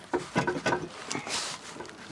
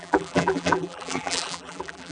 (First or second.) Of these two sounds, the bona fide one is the first